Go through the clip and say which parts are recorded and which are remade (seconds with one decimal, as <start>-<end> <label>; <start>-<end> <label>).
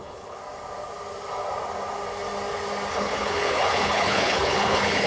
0.0-0.4 remade; 0.4-2.9 recorded; 2.9-5.1 remade